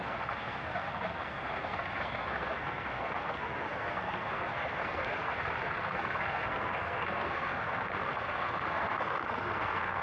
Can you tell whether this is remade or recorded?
remade